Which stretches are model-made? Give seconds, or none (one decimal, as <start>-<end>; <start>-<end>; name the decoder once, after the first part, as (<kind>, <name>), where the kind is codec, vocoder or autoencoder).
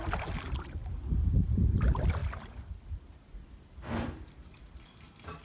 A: none